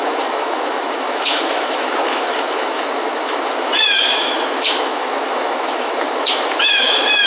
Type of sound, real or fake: fake